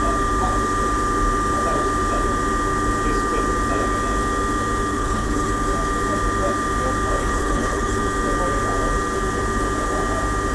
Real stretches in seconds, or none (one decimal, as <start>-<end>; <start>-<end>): 0.0-4.9; 5.5-7.2; 8.0-10.5